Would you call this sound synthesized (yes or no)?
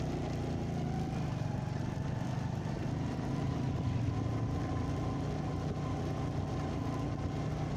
no